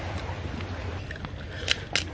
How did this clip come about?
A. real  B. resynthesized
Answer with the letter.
A